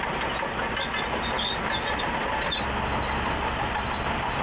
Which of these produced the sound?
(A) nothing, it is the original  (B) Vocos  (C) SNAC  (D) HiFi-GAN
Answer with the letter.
A